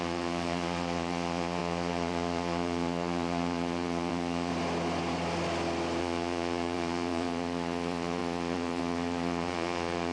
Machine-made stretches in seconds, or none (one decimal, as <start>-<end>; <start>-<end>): 0.0-4.5; 6.0-10.1